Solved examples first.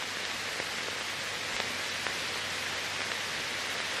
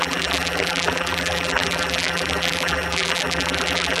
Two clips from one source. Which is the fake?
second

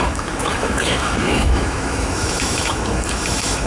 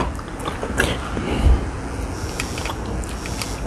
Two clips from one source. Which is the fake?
first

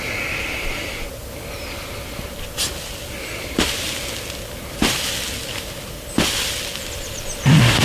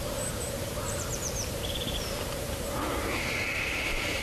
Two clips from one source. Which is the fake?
second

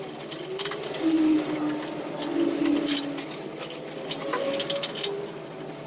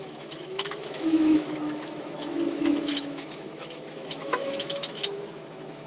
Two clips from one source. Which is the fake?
second